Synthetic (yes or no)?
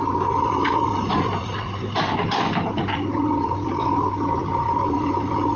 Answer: yes